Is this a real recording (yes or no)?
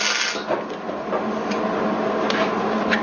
yes